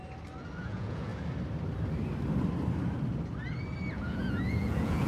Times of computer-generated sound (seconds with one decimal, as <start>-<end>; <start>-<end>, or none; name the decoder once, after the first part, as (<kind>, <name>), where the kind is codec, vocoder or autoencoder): 0.6-1.1 (vocoder, Vocos); 3.9-5.1